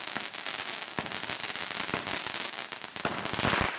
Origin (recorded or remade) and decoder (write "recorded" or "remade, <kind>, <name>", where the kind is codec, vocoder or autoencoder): recorded